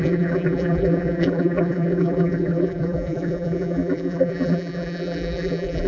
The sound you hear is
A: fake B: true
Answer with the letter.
A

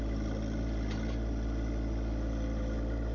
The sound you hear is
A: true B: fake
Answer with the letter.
A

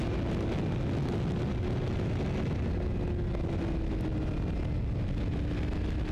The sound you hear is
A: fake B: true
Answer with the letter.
B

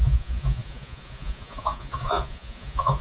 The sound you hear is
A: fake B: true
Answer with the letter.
A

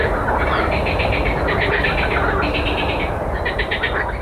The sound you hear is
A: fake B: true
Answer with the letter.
B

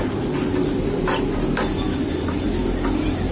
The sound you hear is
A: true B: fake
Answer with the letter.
A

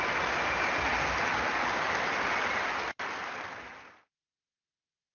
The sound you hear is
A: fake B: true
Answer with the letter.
B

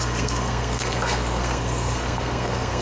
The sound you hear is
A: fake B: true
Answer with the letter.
A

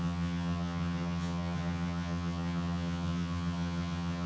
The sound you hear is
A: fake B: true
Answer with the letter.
A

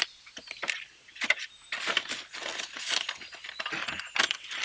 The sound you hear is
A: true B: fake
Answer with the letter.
A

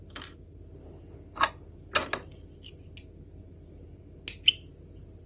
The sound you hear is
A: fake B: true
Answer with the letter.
B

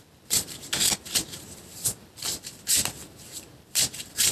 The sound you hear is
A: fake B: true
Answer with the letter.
B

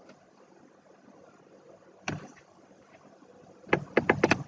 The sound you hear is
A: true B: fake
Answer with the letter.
A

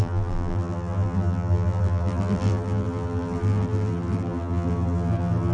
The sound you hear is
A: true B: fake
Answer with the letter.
B